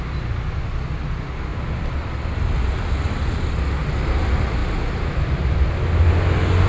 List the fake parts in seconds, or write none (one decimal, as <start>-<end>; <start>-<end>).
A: none